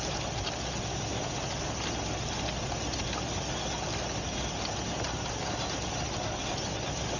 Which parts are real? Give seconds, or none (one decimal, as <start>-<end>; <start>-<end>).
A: 0.0-7.2